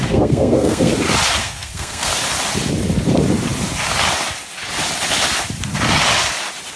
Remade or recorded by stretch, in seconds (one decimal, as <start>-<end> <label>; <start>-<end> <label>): 0.0-0.9 remade; 0.9-1.4 recorded; 1.4-2.1 remade; 2.1-6.8 recorded

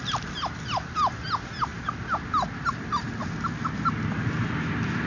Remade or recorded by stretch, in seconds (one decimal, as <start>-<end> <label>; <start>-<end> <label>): 0.0-5.1 recorded

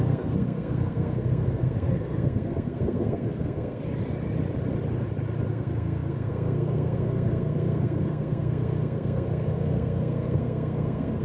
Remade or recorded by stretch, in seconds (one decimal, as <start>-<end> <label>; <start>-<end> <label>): 0.0-3.8 remade; 3.8-5.5 recorded; 5.5-11.2 remade

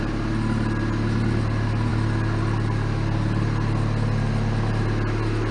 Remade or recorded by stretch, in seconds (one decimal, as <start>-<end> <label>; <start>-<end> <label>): 0.0-5.5 recorded

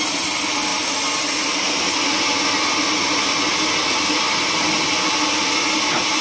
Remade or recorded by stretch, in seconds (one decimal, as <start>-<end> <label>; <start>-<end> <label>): 0.0-6.2 recorded

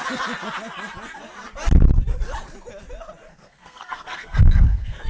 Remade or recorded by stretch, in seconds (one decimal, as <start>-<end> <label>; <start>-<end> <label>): 0.0-3.3 recorded; 3.3-5.1 remade

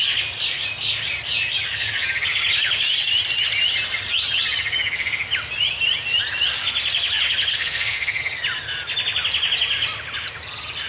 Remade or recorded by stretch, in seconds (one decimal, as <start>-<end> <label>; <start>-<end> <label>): 0.0-7.5 recorded; 7.5-8.2 remade; 8.2-10.9 recorded

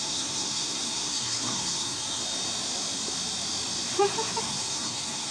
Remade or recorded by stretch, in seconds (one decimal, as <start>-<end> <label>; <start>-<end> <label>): 0.0-2.2 remade; 2.2-4.4 recorded; 4.4-5.3 remade